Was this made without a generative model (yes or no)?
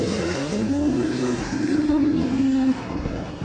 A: no